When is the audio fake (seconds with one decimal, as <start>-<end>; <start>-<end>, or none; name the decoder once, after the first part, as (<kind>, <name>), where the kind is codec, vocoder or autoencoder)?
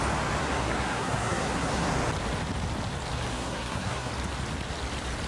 0.4-1.9 (codec, SNAC); 3.3-4.1